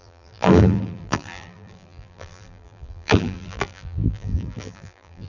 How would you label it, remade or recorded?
remade